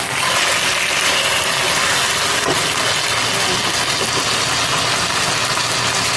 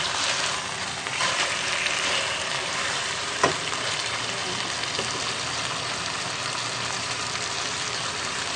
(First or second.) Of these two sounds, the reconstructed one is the second